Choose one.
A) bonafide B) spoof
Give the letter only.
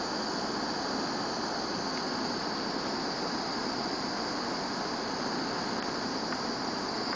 A